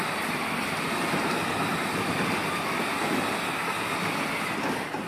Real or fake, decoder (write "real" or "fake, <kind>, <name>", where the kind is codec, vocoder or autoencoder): real